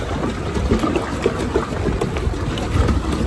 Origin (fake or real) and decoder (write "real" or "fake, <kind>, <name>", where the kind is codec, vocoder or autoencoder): real